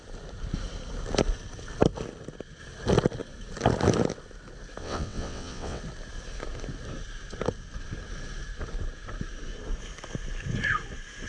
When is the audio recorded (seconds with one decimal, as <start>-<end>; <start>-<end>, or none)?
0.0-4.8; 5.8-11.3